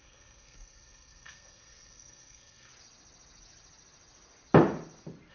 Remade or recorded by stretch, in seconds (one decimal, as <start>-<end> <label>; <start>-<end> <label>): 0.0-2.7 remade; 2.7-5.3 recorded